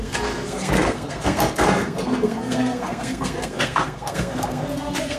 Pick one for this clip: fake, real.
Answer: fake